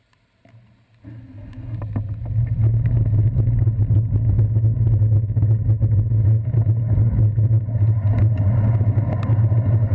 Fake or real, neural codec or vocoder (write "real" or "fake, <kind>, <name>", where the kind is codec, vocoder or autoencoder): real